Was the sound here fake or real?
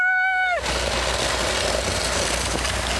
real